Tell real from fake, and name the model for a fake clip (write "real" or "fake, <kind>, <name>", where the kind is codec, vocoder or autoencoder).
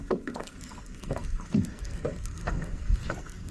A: fake, codec, SNAC